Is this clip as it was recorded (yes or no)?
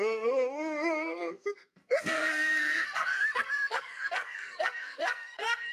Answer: no